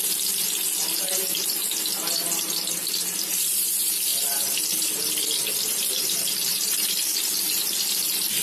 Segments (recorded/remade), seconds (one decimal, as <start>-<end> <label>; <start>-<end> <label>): 0.0-8.4 recorded